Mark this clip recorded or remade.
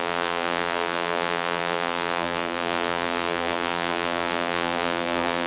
remade